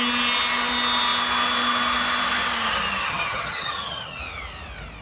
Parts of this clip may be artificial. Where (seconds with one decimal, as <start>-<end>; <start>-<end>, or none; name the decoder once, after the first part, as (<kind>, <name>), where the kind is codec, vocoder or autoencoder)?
3.0-4.2 (vocoder, HiFi-GAN)